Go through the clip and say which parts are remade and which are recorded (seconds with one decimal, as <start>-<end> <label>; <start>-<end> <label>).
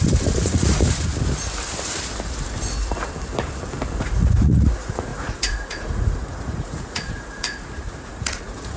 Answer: 0.0-1.1 remade; 1.1-4.0 recorded; 4.0-8.8 remade